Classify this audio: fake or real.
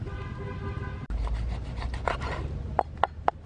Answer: real